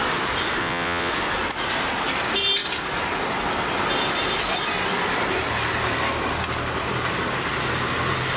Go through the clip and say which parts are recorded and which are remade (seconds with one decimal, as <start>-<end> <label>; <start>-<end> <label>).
0.0-0.6 recorded; 0.6-1.1 remade; 1.1-8.4 recorded